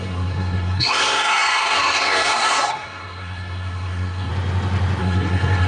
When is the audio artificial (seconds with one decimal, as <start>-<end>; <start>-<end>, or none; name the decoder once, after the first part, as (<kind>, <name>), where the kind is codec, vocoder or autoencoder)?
0.0-4.3 (codec, SNAC); 5.0-5.7